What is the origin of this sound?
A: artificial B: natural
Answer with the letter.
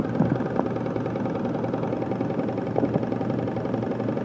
B